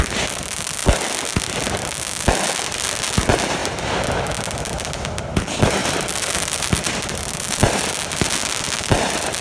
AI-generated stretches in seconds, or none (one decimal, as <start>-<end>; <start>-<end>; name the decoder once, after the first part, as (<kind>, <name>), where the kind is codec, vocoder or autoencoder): 5.8-7.9 (vocoder, BigVGAN v2)